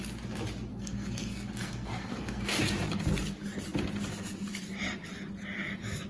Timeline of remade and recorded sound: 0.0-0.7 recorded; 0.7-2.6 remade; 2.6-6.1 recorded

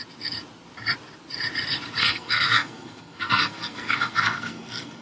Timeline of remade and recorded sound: 0.0-2.0 recorded; 2.0-5.0 remade

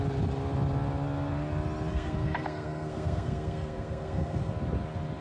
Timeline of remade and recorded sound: 0.0-1.9 recorded; 1.9-4.5 remade; 4.5-5.2 recorded

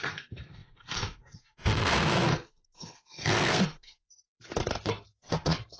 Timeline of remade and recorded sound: 0.0-5.8 remade

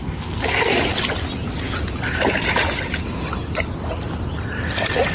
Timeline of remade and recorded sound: 0.0-0.7 remade; 0.7-5.1 recorded